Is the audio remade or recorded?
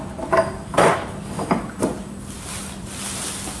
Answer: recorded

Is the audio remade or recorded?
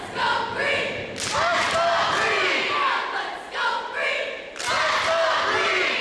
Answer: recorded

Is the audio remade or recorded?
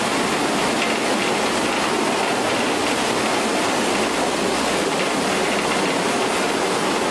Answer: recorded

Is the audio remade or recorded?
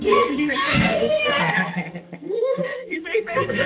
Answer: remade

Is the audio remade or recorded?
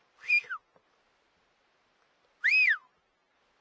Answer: recorded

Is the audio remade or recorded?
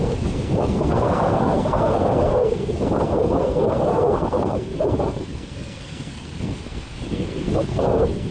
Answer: remade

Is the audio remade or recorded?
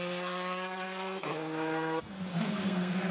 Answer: remade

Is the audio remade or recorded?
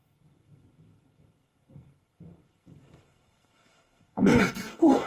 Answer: remade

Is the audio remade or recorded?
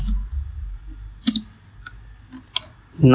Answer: recorded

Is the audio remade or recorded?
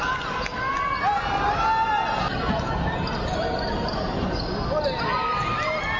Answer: recorded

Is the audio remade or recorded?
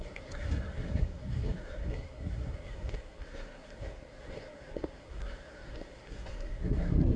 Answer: remade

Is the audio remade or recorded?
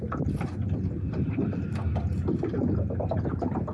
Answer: recorded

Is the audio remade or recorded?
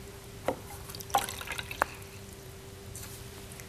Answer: recorded